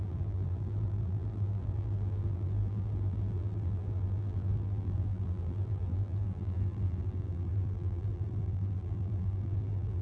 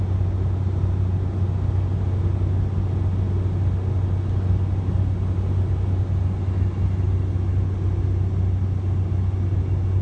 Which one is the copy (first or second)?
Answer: first